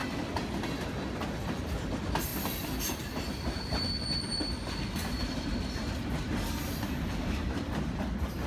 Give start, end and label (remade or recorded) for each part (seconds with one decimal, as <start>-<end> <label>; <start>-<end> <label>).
0.0-7.1 recorded; 7.1-7.8 remade; 7.8-8.5 recorded